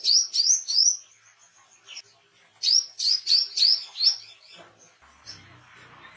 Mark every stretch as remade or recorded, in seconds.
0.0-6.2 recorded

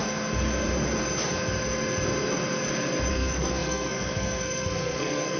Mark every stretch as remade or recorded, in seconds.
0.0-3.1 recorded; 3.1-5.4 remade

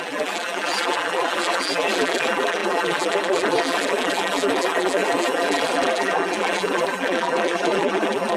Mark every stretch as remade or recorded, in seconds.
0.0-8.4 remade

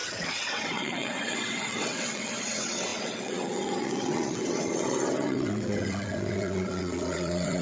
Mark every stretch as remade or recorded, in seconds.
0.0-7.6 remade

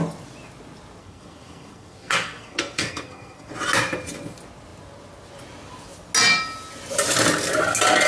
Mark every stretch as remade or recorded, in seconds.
0.0-1.0 recorded; 1.0-3.5 remade; 3.5-8.1 recorded